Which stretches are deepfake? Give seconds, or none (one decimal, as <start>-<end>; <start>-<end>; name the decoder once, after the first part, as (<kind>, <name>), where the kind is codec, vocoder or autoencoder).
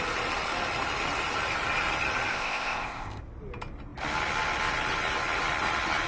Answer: 2.3-3.2 (codec, ZipCodec)